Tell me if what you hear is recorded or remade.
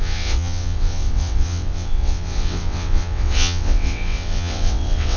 remade